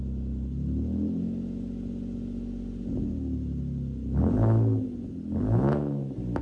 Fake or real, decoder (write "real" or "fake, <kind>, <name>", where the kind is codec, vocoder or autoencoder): real